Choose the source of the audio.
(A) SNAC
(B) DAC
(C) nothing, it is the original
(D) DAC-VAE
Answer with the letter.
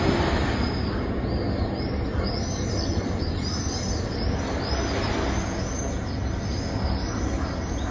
C